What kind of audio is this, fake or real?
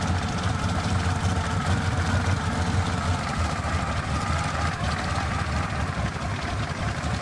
fake